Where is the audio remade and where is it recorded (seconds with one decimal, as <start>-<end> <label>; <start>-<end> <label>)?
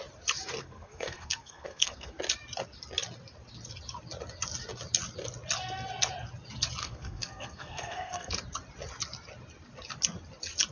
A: 0.0-0.6 recorded; 0.6-2.1 remade; 2.1-6.8 recorded; 6.8-8.3 remade; 8.3-10.7 recorded